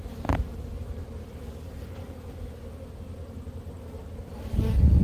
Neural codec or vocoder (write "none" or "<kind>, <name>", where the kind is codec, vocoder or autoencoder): none